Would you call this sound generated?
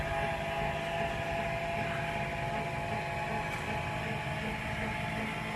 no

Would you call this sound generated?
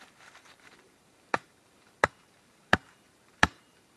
yes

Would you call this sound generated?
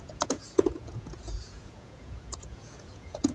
yes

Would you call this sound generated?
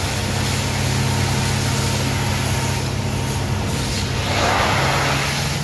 no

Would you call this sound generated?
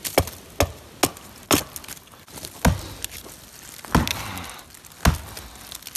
no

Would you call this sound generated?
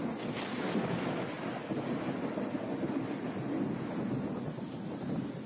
no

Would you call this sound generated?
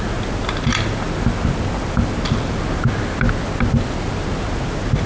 no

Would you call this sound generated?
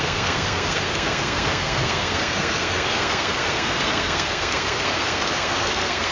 yes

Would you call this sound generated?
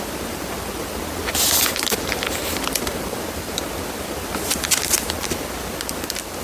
yes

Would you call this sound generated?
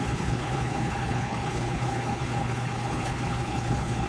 yes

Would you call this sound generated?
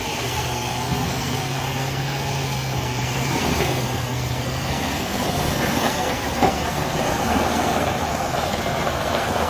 yes